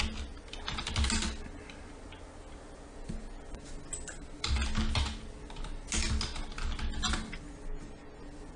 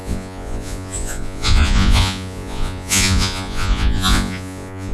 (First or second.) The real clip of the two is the first